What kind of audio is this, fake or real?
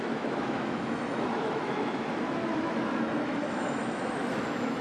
fake